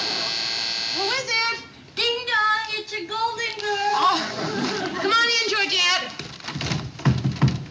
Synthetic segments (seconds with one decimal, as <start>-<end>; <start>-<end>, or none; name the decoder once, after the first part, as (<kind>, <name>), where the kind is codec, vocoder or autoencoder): 3.9-4.4 (vocoder, Vocos)